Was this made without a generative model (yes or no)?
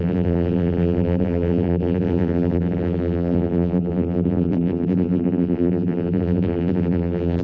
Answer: no